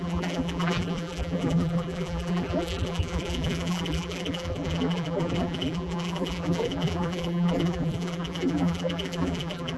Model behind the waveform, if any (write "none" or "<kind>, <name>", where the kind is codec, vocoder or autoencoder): vocoder, BigVGAN v2